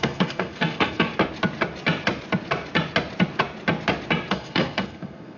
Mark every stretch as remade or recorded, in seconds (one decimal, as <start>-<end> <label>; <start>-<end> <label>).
0.0-1.1 remade; 1.1-4.3 recorded; 4.3-5.4 remade